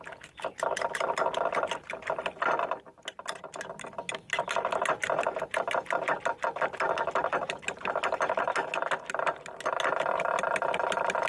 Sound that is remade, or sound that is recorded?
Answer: recorded